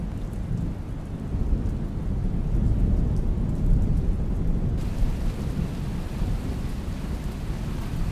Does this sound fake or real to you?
real